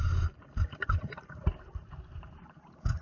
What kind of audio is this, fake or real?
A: fake